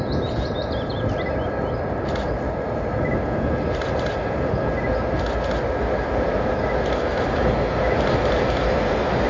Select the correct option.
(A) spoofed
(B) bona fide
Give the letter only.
B